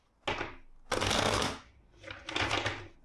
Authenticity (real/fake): real